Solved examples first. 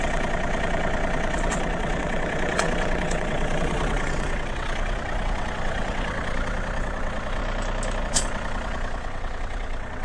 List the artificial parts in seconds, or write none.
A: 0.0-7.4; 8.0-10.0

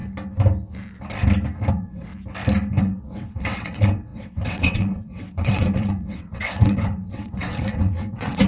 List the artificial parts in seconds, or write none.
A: 1.7-2.1; 2.8-8.5

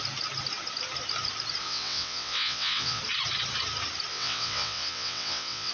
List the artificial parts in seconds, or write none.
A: 1.6-3.0; 4.1-5.7

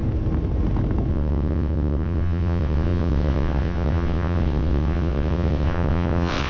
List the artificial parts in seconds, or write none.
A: 1.1-6.5